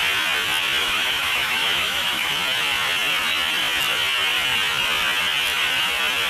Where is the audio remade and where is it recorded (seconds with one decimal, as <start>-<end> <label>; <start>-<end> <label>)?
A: 0.0-0.8 recorded; 0.8-2.3 remade; 2.3-6.3 recorded